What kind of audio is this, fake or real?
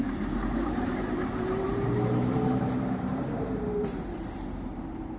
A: fake